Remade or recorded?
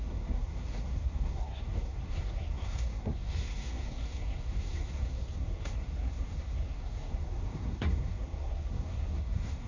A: remade